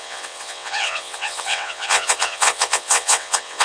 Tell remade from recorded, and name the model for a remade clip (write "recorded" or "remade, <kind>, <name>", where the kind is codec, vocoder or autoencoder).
remade, vocoder, WaveNeXt